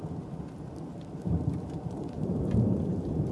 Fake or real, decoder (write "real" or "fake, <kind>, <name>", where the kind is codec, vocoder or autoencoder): fake, vocoder, BigVGAN v2